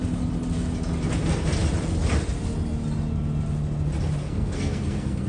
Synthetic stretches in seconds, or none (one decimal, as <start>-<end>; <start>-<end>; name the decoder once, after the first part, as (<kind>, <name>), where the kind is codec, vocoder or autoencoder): 4.2-5.3 (codec, SNAC)